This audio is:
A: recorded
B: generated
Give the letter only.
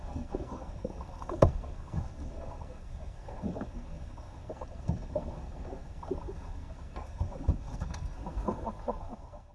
B